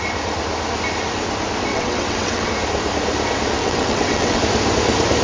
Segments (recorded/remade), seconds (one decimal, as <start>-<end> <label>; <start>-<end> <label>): 0.0-1.7 recorded; 1.7-2.5 remade; 2.5-3.6 recorded; 3.6-4.4 remade; 4.4-5.2 recorded